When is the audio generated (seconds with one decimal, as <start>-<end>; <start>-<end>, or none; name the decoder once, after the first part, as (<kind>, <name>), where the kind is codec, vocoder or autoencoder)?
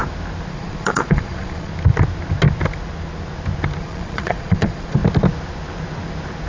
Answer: 0.5-1.7 (vocoder, Vocos); 3.8-5.0